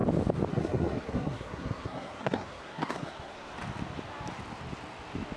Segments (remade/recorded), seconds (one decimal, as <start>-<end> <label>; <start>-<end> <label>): 0.0-0.5 recorded; 0.5-3.5 remade; 3.5-5.4 recorded